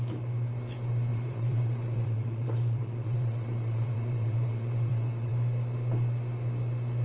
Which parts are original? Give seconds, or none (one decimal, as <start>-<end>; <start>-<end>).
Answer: 0.0-1.1; 5.3-7.0

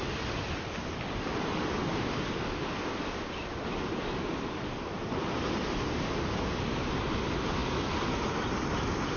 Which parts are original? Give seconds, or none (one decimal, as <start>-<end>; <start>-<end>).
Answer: 0.0-9.2

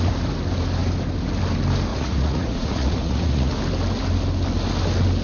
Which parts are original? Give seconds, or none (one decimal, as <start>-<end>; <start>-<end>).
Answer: 0.0-1.9; 3.5-5.2

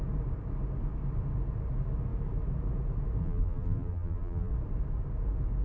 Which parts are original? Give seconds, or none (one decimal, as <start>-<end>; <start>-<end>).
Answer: 0.0-3.2; 4.5-5.6

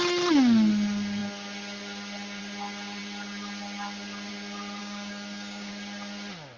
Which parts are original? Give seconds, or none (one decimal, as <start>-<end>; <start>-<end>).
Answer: 0.0-4.8; 5.7-6.6

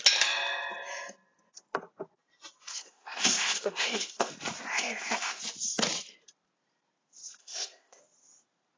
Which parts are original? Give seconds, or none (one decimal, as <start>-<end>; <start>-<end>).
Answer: 0.0-2.7; 4.3-4.7; 5.4-7.4; 8.0-8.8

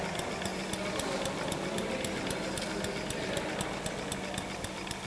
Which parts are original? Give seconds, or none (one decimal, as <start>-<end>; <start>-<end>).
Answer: 0.0-5.1

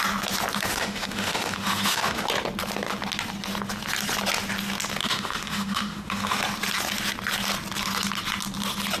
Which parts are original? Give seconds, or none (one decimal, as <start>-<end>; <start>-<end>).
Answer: 0.0-0.7; 2.3-5.0; 6.4-9.0